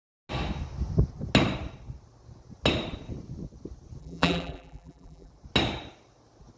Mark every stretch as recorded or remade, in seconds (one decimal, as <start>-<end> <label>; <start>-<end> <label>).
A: 0.0-4.0 recorded; 4.0-5.3 remade; 5.3-6.6 recorded